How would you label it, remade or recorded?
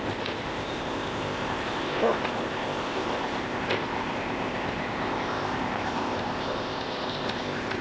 remade